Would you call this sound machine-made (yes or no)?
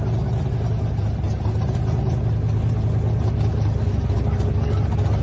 no